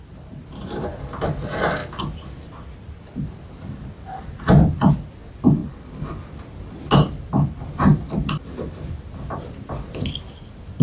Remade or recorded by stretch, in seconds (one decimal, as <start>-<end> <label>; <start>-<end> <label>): 0.0-10.8 recorded

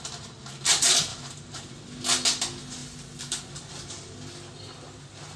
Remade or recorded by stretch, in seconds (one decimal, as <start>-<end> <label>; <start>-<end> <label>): 0.0-1.1 recorded; 1.1-1.7 remade; 1.7-5.4 recorded

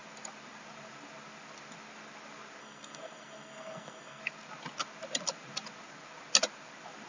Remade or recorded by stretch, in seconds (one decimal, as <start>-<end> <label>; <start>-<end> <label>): 0.0-2.6 recorded; 2.6-4.2 remade; 4.2-7.1 recorded